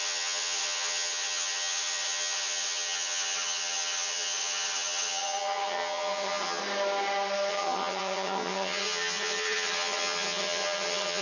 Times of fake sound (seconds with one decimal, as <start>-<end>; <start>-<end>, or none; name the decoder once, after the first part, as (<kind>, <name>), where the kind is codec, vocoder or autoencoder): 0.0-6.6 (vocoder, HiFi-GAN); 7.5-11.2